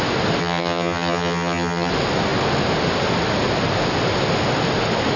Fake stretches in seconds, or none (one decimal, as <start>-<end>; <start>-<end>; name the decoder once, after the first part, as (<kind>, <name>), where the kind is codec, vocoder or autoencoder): 0.4-1.9 (vocoder, HiFi-GAN)